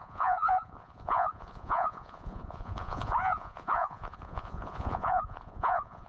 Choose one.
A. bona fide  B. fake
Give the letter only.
B